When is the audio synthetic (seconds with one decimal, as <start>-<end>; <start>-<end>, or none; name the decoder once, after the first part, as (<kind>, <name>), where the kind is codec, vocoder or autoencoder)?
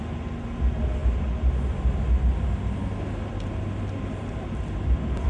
none